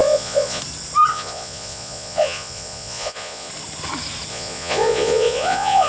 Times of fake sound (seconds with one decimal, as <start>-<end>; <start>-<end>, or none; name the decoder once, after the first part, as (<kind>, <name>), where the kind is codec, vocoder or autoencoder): 0.0-0.6 (vocoder, Vocos); 1.1-3.5; 4.3-5.9